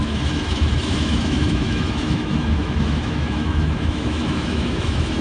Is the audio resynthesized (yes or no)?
yes